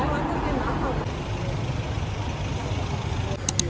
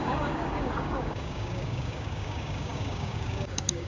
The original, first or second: first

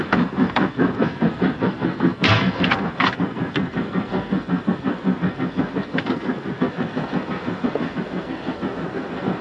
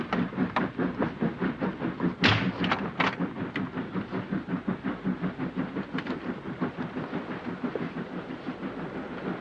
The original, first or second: second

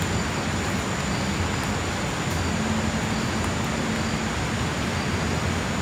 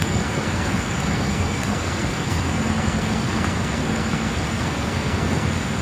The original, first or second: first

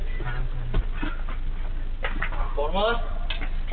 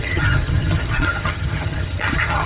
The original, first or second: first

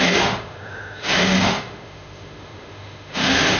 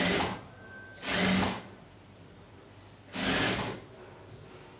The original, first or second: second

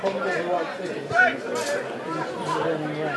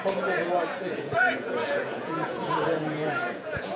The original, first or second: first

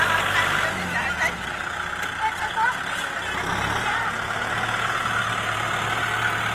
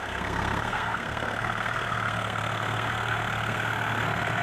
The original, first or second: first